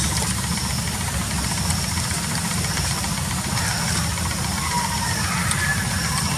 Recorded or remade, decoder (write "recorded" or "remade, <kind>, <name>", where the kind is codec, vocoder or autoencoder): recorded